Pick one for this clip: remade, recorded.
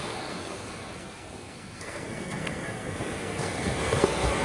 remade